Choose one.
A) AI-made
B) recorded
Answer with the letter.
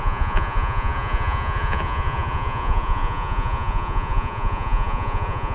A